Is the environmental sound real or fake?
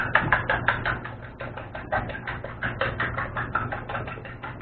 real